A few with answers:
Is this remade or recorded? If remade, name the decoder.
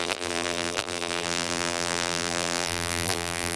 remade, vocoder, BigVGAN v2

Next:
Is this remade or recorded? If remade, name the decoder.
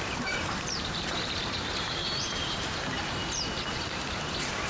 remade, vocoder, BigVGAN v2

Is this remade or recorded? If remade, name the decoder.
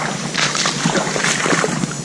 recorded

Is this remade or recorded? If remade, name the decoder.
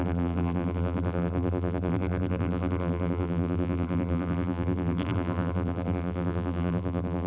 remade, vocoder, BigVGAN v2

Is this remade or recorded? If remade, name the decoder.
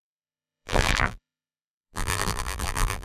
remade, vocoder, BigVGAN v2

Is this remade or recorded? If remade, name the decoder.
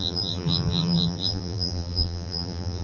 remade, vocoder, BigVGAN v2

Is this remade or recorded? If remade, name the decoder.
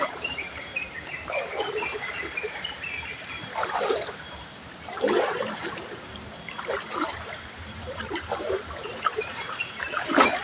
remade, vocoder, BigVGAN v2